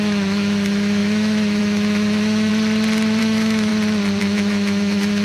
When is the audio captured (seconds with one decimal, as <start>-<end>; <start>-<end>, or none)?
2.5-3.2; 3.7-4.2